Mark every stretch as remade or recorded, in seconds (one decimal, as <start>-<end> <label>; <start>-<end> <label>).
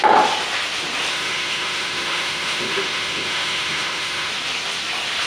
0.0-1.1 recorded; 1.1-4.3 remade; 4.3-5.3 recorded